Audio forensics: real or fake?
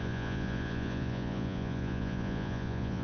fake